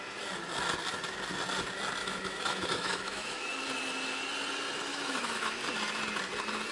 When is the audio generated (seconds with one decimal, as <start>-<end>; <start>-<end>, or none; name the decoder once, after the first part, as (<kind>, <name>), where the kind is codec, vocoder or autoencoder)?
2.0-3.4 (autoencoder, DAC-VAE); 4.9-5.6